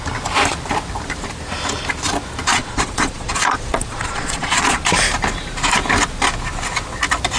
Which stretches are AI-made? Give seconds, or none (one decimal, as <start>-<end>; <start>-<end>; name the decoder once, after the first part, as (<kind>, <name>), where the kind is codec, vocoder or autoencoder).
2.5-4.8 (vocoder, Vocos)